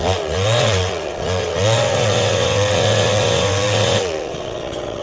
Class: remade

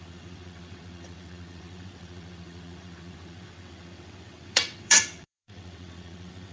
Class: remade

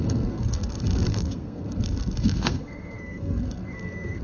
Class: remade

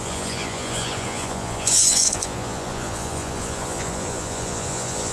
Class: remade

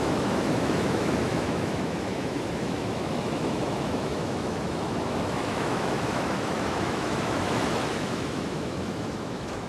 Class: remade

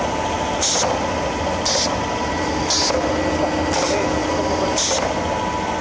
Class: recorded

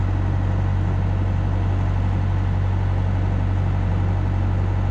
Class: recorded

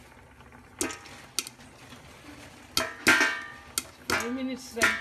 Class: recorded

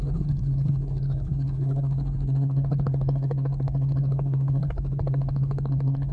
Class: remade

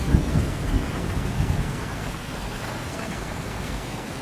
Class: remade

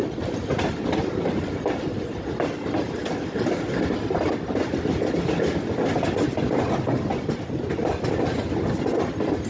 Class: recorded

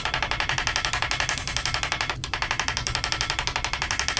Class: recorded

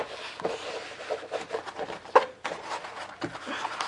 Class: recorded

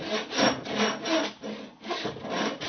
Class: recorded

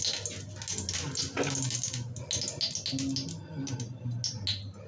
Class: recorded